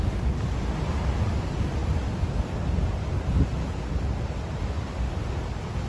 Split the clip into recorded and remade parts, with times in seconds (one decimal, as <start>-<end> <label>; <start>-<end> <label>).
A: 0.0-5.9 recorded